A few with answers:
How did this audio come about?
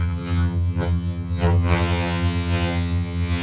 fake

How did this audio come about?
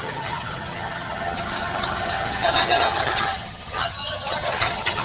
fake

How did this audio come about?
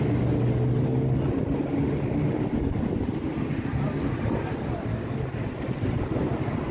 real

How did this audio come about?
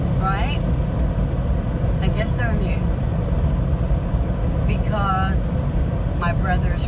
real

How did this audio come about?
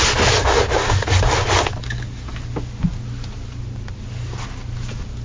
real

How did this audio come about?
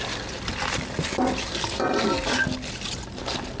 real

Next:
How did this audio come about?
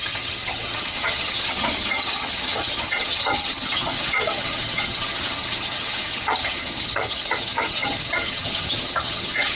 fake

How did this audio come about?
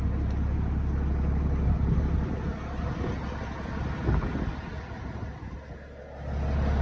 real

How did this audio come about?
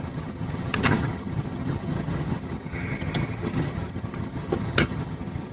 fake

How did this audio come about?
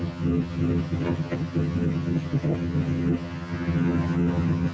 fake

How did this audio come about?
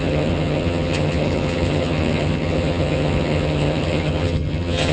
fake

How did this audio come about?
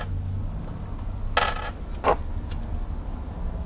real